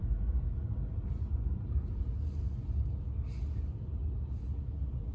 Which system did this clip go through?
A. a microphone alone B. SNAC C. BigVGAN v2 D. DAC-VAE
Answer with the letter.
A